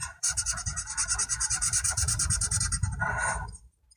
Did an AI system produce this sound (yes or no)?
yes